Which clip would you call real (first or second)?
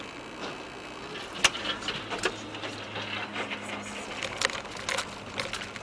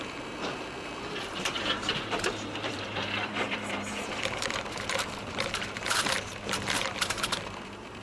first